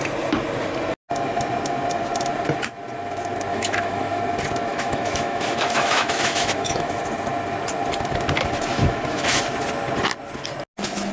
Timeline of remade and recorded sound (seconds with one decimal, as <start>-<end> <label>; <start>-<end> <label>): 0.0-3.5 recorded; 3.5-4.2 remade; 4.2-4.7 recorded; 4.7-7.0 remade; 7.0-8.7 recorded; 8.7-9.4 remade; 9.4-11.1 recorded